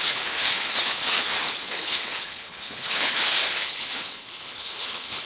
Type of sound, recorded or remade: remade